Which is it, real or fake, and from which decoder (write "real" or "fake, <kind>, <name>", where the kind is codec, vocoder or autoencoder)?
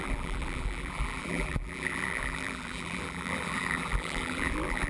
fake, vocoder, BigVGAN v2